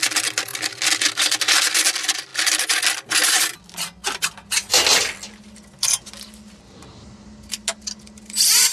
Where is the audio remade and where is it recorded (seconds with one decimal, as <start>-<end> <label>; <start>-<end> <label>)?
0.0-8.7 recorded